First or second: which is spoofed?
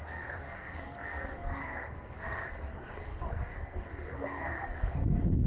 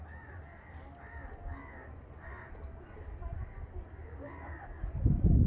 first